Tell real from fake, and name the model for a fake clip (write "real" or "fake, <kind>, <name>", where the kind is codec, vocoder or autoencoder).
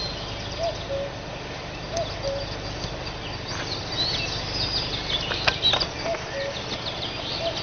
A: real